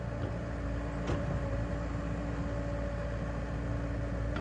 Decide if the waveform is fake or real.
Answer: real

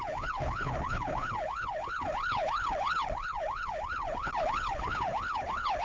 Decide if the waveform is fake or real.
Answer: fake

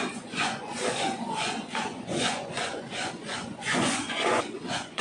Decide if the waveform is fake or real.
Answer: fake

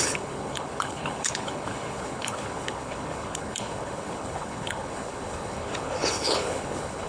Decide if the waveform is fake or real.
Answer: fake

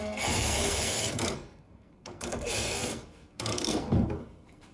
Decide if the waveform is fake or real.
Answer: fake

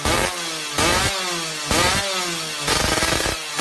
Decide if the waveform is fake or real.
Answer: real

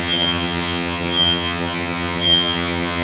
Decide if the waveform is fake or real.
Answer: fake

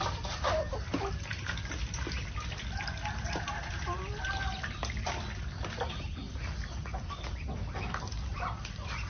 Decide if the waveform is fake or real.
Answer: fake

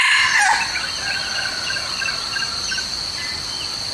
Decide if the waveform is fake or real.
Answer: real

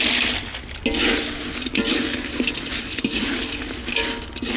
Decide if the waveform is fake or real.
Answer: real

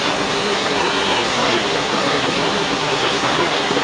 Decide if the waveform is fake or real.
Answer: fake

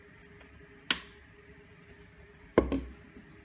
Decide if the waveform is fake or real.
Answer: real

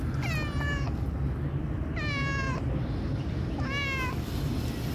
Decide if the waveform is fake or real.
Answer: real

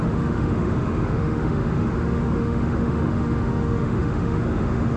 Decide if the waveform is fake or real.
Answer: fake